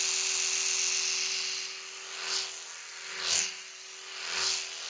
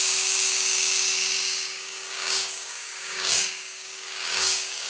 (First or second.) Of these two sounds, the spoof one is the second